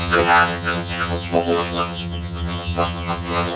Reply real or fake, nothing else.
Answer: fake